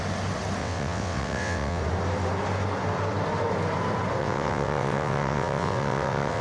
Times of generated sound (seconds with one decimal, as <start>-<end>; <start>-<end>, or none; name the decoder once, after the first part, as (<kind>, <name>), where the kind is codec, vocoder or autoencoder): 0.6-1.8 (vocoder, WaveNeXt); 4.2-6.4